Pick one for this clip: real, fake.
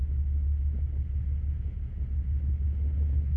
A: real